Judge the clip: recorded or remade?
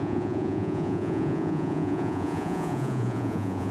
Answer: remade